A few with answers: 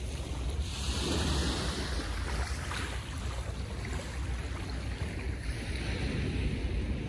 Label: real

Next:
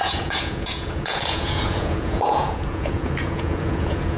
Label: fake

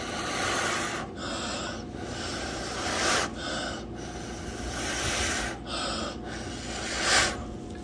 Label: real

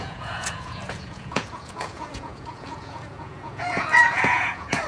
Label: fake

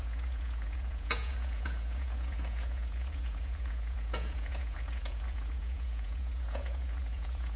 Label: fake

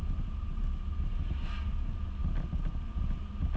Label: real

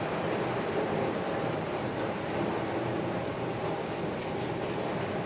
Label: real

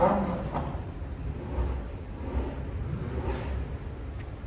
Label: real